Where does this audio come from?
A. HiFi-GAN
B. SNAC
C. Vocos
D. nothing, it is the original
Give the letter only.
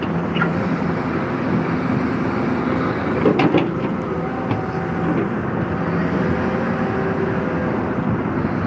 D